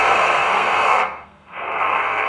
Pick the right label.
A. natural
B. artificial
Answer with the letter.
B